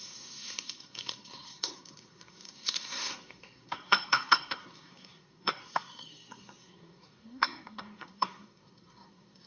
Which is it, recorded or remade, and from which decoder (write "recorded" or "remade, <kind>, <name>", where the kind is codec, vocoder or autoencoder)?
remade, codec, SNAC